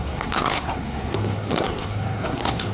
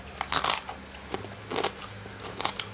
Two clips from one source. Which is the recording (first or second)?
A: second